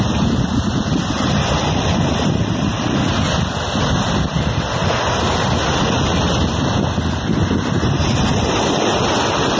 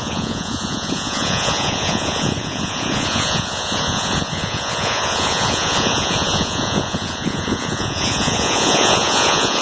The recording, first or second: first